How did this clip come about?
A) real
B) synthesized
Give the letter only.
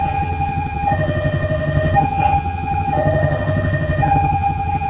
B